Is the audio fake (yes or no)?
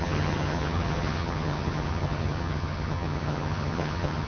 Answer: yes